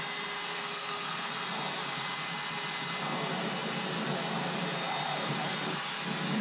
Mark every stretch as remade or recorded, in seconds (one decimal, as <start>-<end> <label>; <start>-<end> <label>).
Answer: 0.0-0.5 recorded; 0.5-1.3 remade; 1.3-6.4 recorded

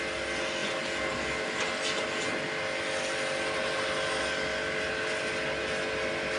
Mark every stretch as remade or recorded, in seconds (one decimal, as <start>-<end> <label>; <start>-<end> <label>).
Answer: 0.0-6.4 recorded

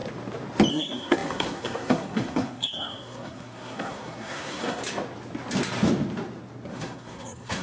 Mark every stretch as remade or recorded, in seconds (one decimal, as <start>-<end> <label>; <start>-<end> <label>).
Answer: 0.0-0.7 recorded; 0.7-4.8 remade; 4.8-6.7 recorded; 6.7-7.6 remade

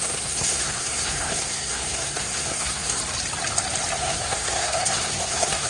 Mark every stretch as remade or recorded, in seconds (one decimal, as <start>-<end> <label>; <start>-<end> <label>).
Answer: 0.0-3.0 remade; 3.0-4.0 recorded; 4.0-5.7 remade

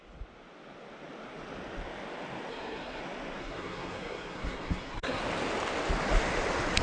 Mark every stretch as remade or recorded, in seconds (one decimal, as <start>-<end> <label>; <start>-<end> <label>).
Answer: 0.0-2.5 recorded; 2.5-3.0 remade; 3.0-3.4 recorded; 3.4-5.2 remade; 5.2-6.8 recorded

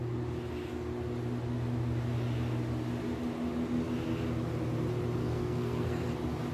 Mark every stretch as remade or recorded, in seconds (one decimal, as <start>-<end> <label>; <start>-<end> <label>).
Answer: 0.0-5.2 recorded; 5.2-6.1 remade; 6.1-6.5 recorded

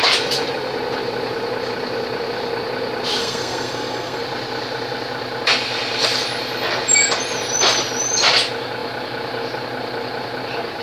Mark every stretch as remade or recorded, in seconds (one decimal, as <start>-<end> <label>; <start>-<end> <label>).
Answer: 0.0-3.2 recorded; 3.2-4.2 remade; 4.2-10.8 recorded